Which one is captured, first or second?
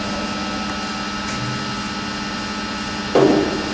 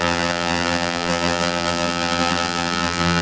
first